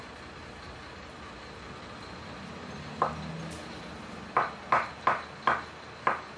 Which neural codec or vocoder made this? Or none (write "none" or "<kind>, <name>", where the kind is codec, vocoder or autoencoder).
none